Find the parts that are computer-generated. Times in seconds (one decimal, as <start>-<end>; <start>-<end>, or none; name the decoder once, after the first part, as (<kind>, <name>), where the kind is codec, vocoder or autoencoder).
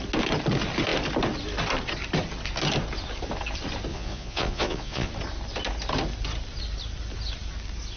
3.9-5.1 (vocoder, Vocos)